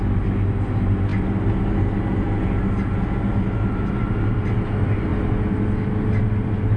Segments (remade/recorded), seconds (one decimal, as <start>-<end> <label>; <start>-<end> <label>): 0.0-6.8 recorded